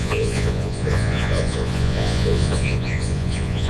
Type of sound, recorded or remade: remade